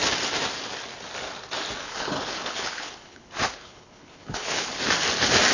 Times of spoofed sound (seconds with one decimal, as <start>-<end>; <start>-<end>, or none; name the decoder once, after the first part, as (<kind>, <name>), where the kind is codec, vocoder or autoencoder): 1.8-4.8 (codec, HILCodec)